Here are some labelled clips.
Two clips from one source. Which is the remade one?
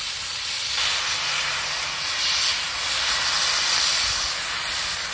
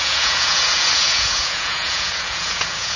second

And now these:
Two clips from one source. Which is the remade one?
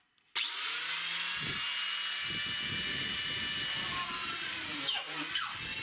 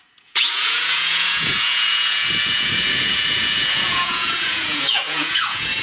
second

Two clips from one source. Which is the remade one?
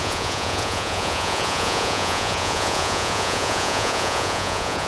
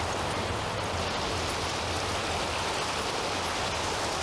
first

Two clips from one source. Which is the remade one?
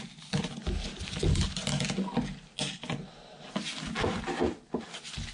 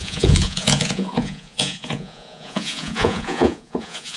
second